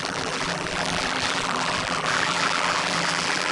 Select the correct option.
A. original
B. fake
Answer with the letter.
B